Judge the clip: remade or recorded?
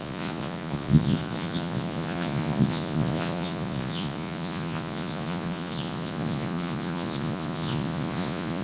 remade